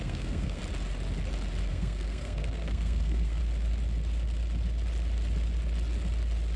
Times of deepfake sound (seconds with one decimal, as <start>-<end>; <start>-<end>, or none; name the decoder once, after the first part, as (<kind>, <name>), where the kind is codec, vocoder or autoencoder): 0.0-0.6 (codec, SNAC); 1.7-3.4